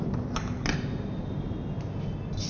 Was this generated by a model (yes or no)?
no